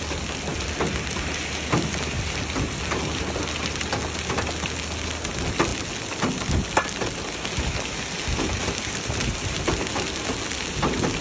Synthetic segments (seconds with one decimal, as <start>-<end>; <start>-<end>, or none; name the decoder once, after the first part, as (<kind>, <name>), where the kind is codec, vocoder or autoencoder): none